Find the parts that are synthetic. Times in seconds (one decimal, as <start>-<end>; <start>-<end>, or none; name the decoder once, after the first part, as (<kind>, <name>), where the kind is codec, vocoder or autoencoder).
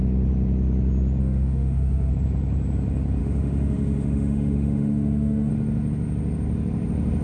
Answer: 1.2-2.1 (autoencoder, DAC-VAE); 3.2-5.5